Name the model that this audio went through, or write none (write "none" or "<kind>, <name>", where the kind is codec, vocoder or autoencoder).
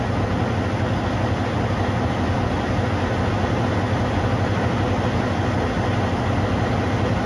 none